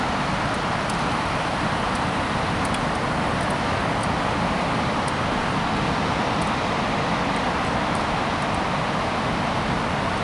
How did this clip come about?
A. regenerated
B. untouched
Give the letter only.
B